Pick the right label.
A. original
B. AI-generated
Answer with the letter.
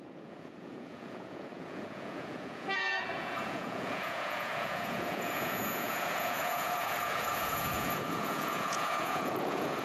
B